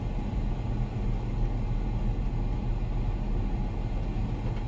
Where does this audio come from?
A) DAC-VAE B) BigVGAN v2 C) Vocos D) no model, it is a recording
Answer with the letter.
D